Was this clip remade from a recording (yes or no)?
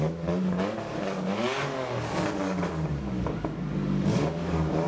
yes